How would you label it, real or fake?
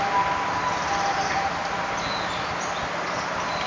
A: real